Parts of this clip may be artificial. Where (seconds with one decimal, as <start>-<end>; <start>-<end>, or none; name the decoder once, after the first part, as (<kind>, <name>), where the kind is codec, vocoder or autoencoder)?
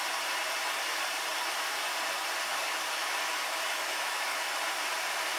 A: 2.5-4.4 (autoencoder, DAC-VAE)